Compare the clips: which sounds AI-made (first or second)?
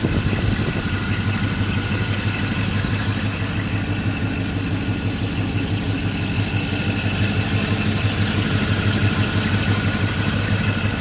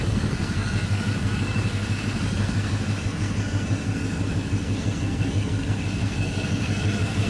second